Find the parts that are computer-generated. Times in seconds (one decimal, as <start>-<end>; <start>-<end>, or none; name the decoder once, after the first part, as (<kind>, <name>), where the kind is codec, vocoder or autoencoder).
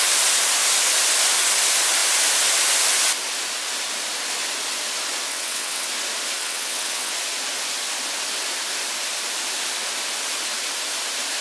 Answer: 5.3-5.9 (vocoder, WaveNeXt); 6.4-7.1